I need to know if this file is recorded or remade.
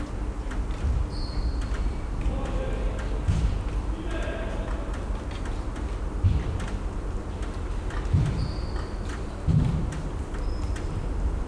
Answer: recorded